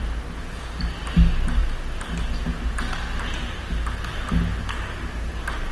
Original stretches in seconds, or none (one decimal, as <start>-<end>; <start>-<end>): 0.0-5.7